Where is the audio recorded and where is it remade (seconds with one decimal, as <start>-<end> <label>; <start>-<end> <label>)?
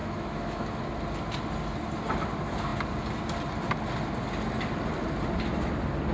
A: 0.0-0.8 remade; 0.8-6.1 recorded